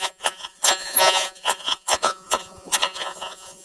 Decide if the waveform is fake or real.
fake